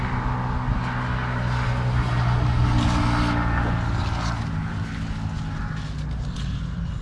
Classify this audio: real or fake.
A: real